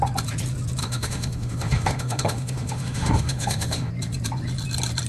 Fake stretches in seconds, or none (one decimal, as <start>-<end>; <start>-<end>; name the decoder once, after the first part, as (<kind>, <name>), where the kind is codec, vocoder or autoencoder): 0.8-3.9 (autoencoder, DAC-VAE)